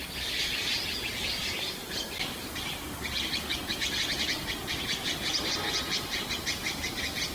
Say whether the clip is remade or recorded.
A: recorded